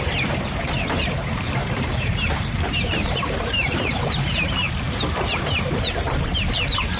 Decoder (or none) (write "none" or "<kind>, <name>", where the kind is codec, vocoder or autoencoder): vocoder, BigVGAN v2